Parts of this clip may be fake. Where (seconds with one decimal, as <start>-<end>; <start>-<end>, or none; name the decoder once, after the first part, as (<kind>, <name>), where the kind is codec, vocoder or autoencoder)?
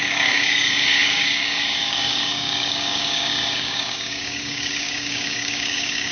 0.0-6.1 (codec, DAC)